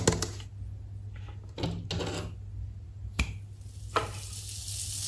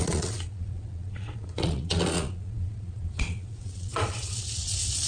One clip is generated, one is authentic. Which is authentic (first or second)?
first